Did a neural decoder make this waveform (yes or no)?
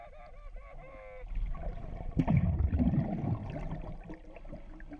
no